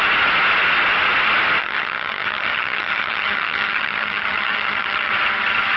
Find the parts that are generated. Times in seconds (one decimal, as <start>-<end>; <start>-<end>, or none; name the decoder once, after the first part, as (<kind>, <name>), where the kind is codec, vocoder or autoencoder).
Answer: 1.6-5.1 (vocoder, HiFi-GAN)